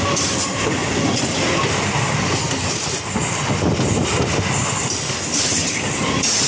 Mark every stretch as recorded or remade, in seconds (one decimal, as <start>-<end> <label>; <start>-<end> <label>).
0.0-6.5 recorded